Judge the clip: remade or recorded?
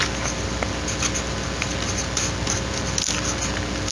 recorded